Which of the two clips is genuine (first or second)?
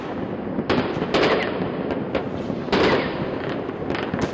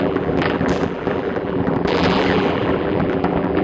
first